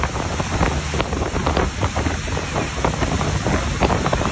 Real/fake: real